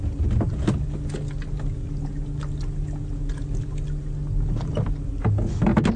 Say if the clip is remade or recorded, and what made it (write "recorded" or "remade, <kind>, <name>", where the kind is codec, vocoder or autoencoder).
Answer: recorded